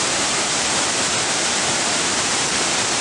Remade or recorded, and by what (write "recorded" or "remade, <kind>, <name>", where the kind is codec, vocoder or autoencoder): remade, vocoder, BigVGAN v2